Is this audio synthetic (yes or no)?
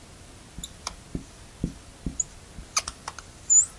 no